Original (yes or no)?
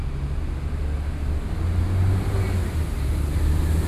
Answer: yes